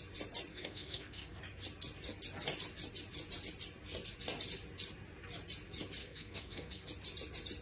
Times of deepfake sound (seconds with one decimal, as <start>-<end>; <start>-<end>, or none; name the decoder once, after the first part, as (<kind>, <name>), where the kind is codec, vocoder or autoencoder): 0.5-1.4 (codec, SNAC); 6.0-6.9